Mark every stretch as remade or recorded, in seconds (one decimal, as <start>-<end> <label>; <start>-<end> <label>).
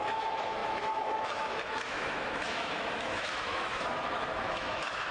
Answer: 0.0-5.1 remade